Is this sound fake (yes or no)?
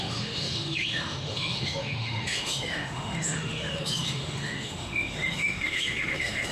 yes